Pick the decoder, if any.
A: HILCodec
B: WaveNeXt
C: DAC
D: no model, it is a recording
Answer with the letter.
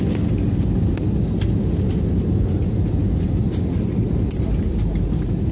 D